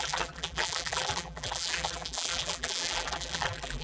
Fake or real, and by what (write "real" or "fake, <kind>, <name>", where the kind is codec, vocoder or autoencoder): fake, vocoder, BigVGAN v2